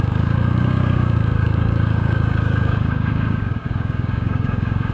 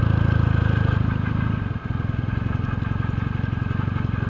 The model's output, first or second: first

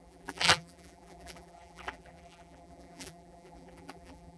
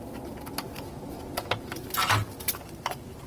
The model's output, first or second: first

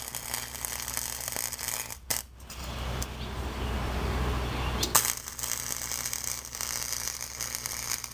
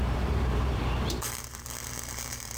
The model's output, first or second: second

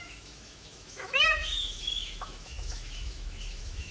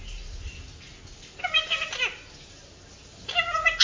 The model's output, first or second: first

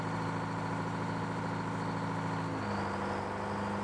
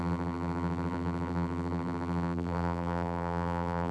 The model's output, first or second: second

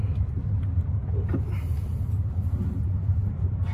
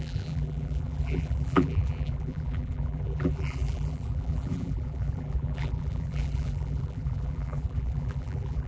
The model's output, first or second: second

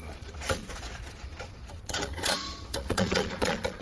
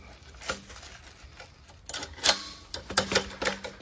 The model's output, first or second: first